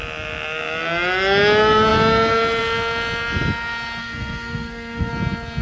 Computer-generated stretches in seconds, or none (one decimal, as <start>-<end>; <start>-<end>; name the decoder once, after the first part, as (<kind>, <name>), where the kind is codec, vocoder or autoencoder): 4.0-5.1 (codec, SNAC)